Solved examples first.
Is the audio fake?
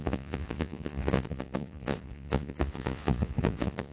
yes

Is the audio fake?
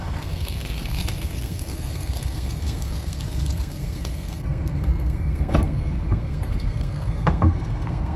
yes